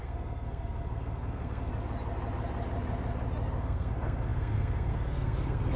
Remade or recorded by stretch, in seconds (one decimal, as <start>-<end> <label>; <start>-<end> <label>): 0.0-1.7 remade; 1.7-3.6 recorded; 3.6-5.8 remade